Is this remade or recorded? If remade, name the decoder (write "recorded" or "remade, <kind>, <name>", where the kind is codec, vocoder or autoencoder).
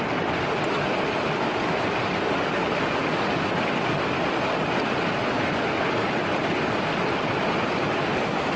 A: recorded